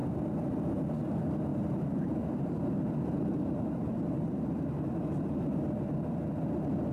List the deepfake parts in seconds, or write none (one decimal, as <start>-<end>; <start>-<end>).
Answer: 1.5-5.6